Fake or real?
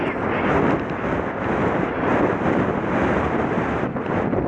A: real